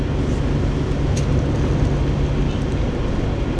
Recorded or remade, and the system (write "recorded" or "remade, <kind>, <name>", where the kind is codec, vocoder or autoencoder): recorded